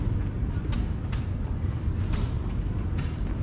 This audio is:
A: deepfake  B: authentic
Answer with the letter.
B